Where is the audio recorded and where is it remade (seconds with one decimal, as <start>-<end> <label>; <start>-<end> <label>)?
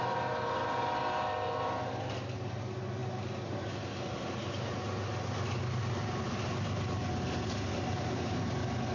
0.0-7.7 recorded; 7.7-8.3 remade; 8.3-8.9 recorded